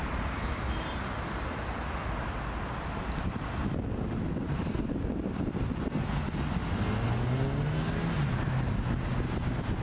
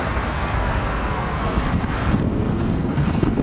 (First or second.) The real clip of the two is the first